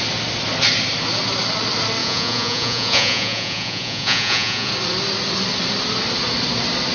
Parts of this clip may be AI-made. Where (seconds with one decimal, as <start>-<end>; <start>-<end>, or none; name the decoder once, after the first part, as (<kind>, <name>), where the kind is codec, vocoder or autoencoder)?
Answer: 2.0-4.7 (vocoder, Vocos)